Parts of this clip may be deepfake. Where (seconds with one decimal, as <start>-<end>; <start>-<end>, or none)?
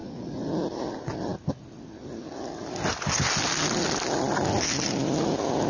0.0-0.5